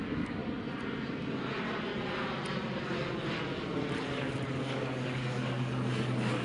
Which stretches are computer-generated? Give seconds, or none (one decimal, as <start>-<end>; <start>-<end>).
0.0-0.4; 4.1-6.4